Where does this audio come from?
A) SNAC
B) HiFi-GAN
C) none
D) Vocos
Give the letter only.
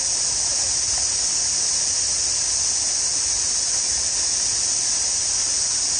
C